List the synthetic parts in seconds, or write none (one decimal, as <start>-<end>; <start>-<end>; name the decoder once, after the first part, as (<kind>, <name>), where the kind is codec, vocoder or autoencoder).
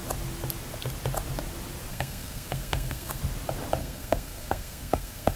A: 1.9-3.2 (codec, SNAC); 3.8-5.4